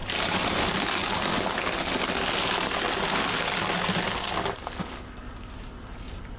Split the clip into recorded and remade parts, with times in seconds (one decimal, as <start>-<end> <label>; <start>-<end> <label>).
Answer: 0.0-0.6 remade; 0.6-6.4 recorded

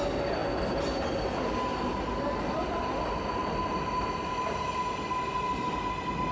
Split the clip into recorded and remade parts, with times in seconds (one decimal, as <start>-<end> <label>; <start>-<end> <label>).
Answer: 0.0-6.3 recorded

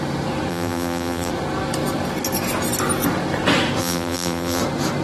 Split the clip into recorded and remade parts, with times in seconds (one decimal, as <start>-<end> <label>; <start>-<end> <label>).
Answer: 0.0-0.5 recorded; 0.5-1.3 remade; 1.3-3.8 recorded; 3.8-4.6 remade; 4.6-5.0 recorded

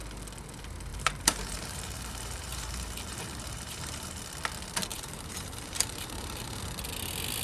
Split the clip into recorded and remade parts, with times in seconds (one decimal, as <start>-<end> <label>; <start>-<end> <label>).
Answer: 0.0-0.9 recorded; 0.9-4.2 remade; 4.2-4.9 recorded; 4.9-6.6 remade; 6.6-7.4 recorded

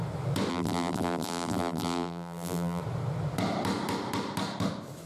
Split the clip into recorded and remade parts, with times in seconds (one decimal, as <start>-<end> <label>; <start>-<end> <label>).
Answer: 0.0-0.5 recorded; 0.5-2.8 remade; 2.8-5.1 recorded

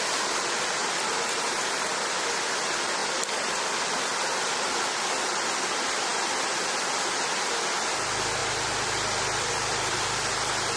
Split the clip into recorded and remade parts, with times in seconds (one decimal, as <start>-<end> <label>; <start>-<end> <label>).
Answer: 0.0-8.4 recorded; 8.4-10.3 remade; 10.3-10.8 recorded

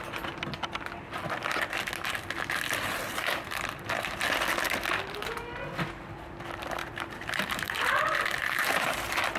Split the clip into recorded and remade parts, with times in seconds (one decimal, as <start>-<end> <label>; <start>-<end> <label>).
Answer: 0.0-6.8 recorded; 6.8-8.0 remade; 8.0-8.4 recorded; 8.4-9.0 remade; 9.0-9.4 recorded

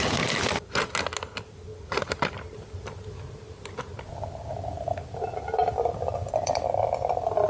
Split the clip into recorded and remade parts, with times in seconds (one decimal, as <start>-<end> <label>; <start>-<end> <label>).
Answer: 0.0-1.7 recorded; 1.7-3.7 remade; 3.7-5.6 recorded; 5.6-6.6 remade; 6.6-7.5 recorded